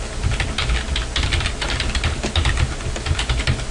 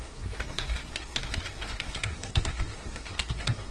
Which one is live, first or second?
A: first